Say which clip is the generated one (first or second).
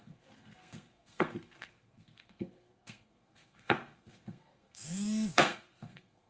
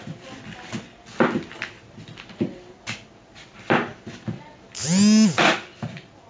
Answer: first